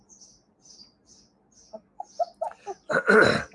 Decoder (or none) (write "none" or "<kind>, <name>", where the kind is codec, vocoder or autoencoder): none